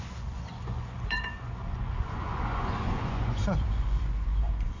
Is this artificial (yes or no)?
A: yes